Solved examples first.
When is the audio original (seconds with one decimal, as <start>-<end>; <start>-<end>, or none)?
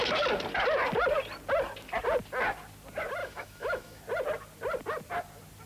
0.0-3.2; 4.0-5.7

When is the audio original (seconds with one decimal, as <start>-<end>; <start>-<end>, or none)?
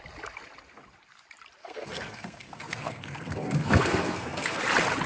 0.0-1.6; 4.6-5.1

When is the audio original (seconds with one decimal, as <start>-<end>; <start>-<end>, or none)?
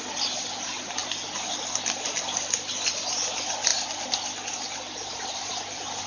0.0-6.1